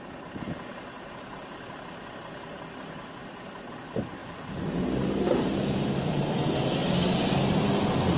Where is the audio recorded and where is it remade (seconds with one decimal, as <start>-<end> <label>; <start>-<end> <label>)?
0.0-8.2 recorded